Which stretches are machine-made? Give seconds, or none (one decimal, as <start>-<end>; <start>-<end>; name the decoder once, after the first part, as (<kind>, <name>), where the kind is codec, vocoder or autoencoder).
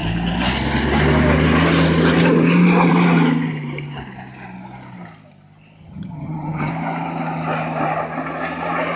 5.8-6.7 (vocoder, HiFi-GAN)